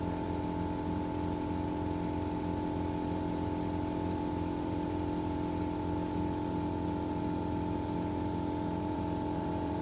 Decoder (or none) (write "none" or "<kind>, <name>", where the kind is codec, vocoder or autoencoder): vocoder, BigVGAN v2